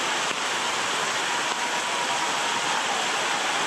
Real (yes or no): yes